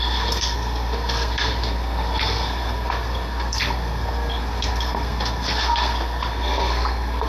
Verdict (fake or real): fake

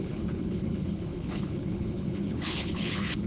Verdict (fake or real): fake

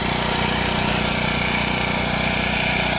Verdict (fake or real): real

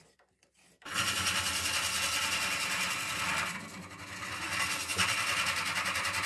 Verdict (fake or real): real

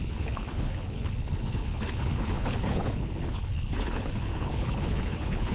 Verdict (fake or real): fake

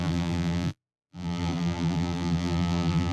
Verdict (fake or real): fake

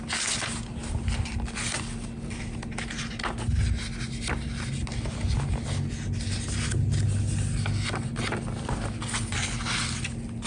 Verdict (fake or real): real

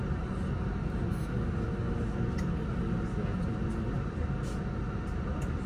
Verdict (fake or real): real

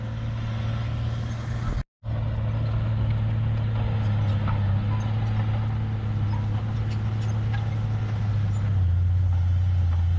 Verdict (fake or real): real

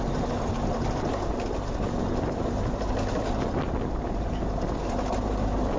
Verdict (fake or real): real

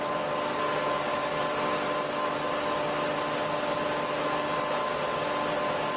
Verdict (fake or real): real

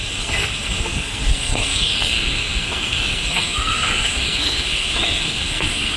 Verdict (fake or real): fake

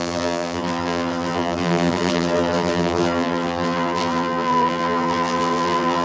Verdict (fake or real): fake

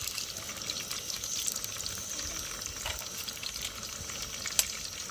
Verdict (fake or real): real